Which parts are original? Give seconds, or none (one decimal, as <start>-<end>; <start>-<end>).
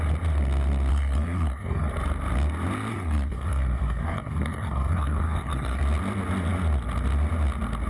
0.0-0.9; 1.9-2.9; 5.8-7.9